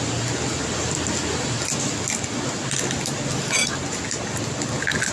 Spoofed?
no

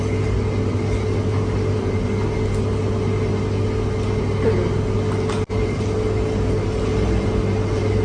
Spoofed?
no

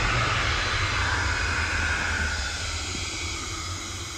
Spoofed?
no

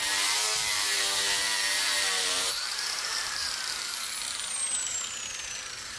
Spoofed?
yes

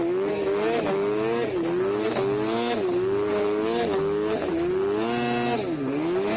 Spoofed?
no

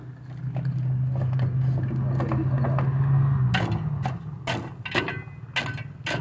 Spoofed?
no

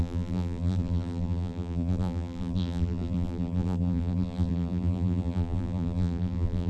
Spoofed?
yes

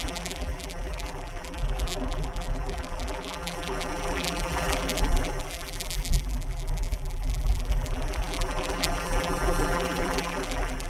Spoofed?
yes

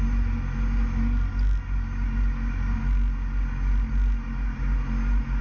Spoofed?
no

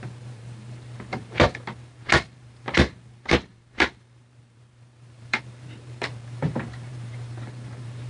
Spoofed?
yes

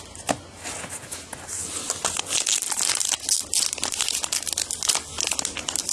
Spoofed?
no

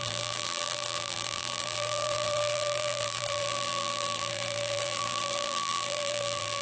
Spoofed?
yes